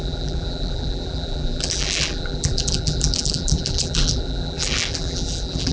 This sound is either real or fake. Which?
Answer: fake